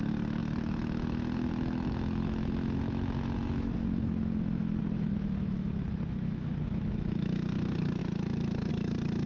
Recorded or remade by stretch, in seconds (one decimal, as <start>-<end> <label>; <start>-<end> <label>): 0.0-9.3 remade